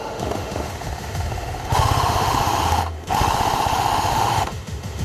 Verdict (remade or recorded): remade